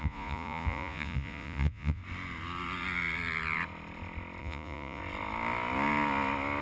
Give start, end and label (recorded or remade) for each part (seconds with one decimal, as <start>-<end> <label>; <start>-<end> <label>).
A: 0.0-2.0 remade; 2.0-4.4 recorded; 4.4-5.0 remade; 5.0-6.6 recorded